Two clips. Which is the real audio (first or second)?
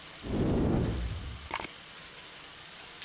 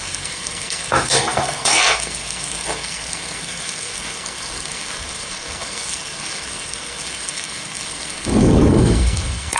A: first